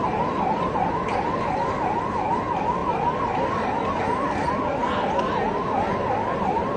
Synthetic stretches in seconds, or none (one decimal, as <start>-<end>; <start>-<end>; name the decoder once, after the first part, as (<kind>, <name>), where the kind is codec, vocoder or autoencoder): none